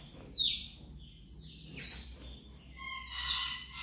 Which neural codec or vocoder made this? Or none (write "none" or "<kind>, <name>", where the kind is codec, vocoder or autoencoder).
none